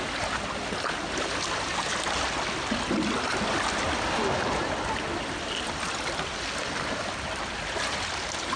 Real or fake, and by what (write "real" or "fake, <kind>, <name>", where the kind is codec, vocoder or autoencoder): real